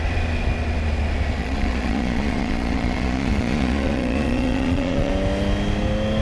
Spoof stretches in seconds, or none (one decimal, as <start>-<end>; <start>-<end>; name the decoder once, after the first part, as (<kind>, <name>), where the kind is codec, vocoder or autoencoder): 1.4-5.1 (vocoder, Vocos)